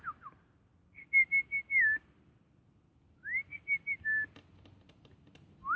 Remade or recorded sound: recorded